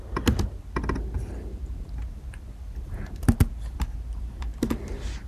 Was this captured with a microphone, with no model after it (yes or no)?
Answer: yes